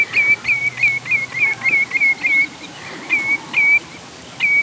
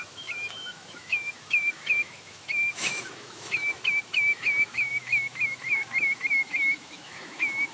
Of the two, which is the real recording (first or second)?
first